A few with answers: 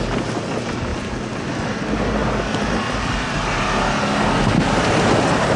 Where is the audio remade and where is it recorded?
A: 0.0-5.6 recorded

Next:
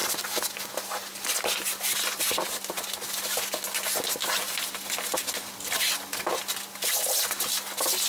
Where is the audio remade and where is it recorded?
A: 0.0-8.1 recorded